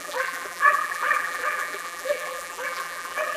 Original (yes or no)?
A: no